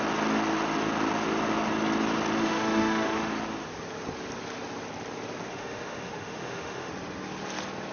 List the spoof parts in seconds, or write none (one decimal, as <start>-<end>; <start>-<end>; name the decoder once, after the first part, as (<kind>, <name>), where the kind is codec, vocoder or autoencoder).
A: 2.4-3.3 (autoencoder, DAC-VAE); 5.5-6.9